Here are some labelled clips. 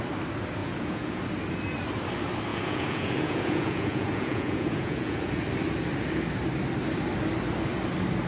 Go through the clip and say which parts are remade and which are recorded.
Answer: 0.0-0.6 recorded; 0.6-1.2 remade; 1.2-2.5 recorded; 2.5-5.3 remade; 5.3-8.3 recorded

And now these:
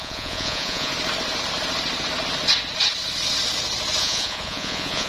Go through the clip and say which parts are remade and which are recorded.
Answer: 0.0-0.9 remade; 0.9-4.0 recorded; 4.0-5.1 remade

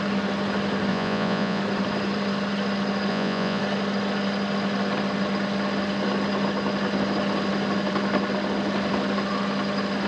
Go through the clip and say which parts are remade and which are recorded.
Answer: 0.0-0.9 recorded; 0.9-1.6 remade; 1.6-3.1 recorded; 3.1-3.6 remade; 3.6-10.1 recorded

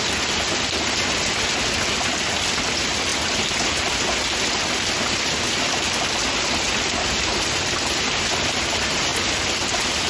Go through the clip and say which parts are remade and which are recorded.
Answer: 0.0-10.1 recorded

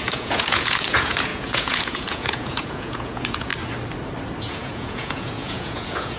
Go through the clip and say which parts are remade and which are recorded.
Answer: 0.0-3.5 remade; 3.5-4.4 recorded; 4.4-6.2 remade